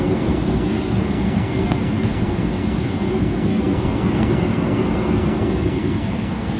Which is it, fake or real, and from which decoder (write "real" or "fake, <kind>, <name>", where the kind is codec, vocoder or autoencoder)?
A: fake, codec, SNAC